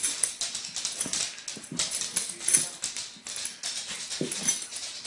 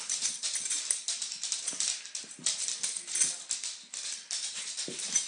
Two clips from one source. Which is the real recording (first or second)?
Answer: first